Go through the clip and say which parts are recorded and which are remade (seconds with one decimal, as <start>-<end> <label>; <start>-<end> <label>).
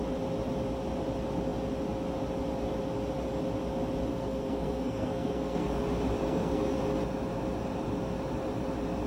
0.0-4.1 recorded; 4.1-5.8 remade; 5.8-6.2 recorded; 6.2-6.8 remade; 6.8-9.1 recorded